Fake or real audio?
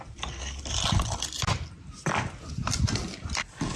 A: real